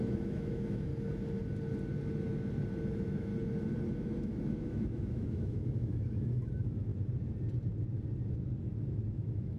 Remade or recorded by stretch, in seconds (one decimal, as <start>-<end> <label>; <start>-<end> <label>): 0.0-0.9 remade; 0.9-2.9 recorded; 2.9-3.3 remade; 3.3-3.9 recorded; 3.9-6.9 remade; 6.9-9.1 recorded; 9.1-9.6 remade